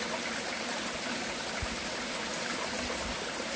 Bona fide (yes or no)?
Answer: yes